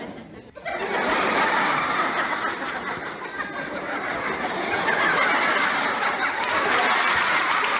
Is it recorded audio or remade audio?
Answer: recorded